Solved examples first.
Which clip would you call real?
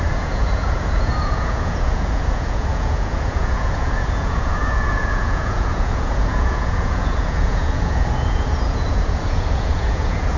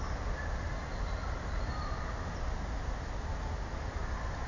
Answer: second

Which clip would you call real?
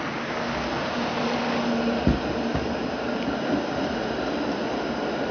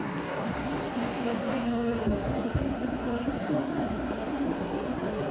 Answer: first